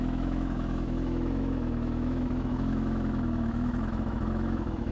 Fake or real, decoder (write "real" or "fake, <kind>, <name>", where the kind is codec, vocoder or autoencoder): fake, autoencoder, DAC-VAE